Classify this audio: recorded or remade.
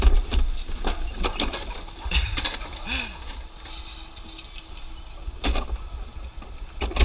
recorded